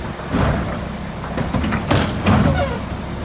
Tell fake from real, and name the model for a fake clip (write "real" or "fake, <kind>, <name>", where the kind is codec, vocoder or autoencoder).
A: real